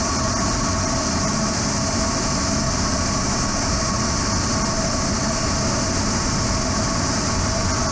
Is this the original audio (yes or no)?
yes